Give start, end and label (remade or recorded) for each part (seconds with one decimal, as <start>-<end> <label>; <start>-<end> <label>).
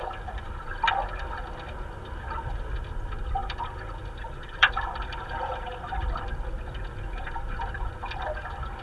0.0-3.4 recorded; 3.4-6.2 remade; 6.2-8.8 recorded